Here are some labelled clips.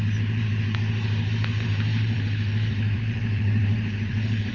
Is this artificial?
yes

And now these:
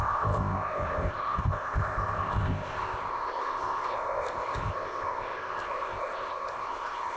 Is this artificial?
yes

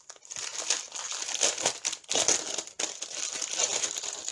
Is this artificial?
no